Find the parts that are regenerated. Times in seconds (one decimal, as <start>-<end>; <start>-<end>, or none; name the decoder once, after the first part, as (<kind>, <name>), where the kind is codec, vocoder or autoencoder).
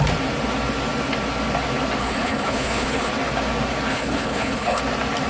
2.0-3.1 (codec, HILCodec); 3.9-4.8